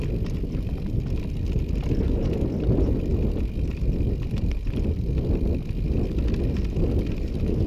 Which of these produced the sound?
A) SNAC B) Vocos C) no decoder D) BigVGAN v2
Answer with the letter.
C